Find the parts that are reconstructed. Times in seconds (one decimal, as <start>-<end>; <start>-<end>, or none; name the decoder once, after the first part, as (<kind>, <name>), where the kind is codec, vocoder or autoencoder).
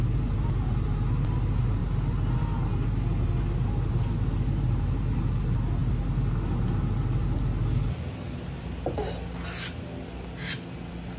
none